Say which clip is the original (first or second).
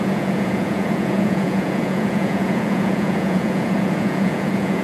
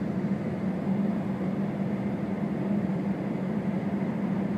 second